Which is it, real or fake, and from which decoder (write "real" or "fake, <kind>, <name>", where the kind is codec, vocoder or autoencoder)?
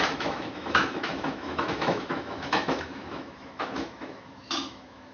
fake, autoencoder, DAC-VAE